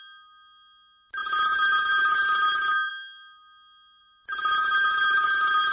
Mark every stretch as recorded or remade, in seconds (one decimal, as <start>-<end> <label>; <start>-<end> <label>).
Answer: 0.0-1.2 recorded; 1.2-2.9 remade; 2.9-4.0 recorded; 4.0-5.7 remade